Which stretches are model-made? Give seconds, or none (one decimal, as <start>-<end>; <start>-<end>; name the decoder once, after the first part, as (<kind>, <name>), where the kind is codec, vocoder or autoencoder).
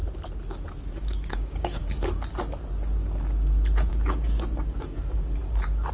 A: 0.8-1.8 (codec, DAC); 3.9-5.9